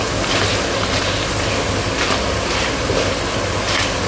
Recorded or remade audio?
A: recorded